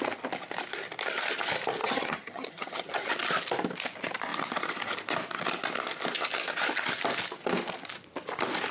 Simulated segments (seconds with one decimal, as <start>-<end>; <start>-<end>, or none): 1.8-3.1